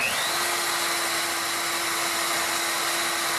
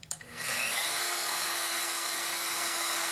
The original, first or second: first